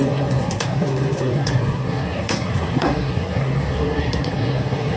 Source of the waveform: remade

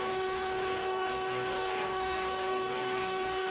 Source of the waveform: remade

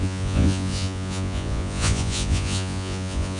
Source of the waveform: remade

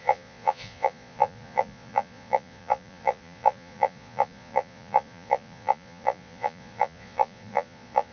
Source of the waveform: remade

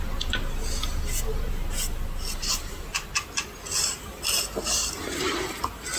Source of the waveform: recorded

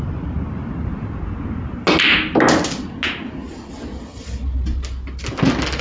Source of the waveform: recorded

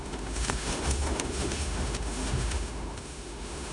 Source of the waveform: remade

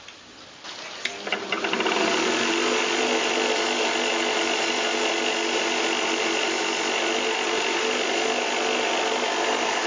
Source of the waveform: recorded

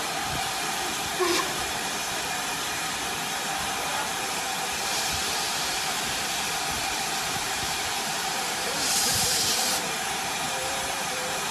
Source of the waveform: remade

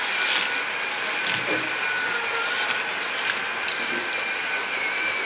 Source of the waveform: recorded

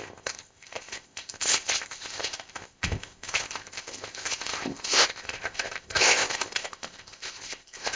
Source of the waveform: remade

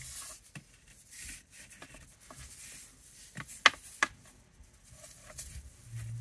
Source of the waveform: recorded